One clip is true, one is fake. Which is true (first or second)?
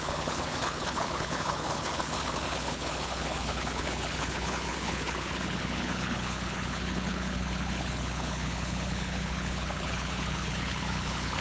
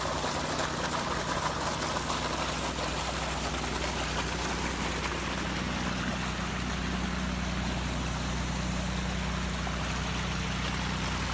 second